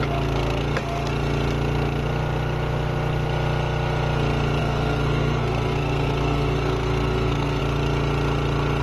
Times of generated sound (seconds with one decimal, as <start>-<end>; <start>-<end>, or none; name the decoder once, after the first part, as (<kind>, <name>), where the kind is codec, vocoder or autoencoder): 4.6-7.6 (codec, SNAC)